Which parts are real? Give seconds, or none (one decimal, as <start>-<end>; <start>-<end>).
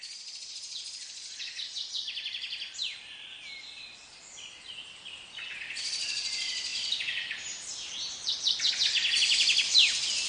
0.0-6.7; 8.7-10.3